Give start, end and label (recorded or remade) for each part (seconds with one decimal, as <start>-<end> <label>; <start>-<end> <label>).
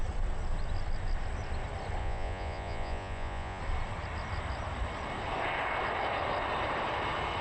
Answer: 0.0-2.0 recorded; 2.0-3.6 remade; 3.6-7.4 recorded